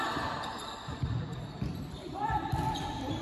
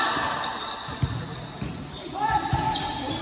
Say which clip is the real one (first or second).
second